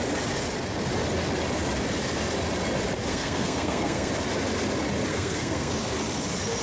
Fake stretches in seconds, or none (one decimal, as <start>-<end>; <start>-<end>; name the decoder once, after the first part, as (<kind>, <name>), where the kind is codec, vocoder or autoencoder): 3.1-4.1 (codec, SNAC); 5.1-5.7